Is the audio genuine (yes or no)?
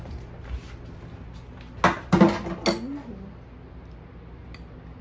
yes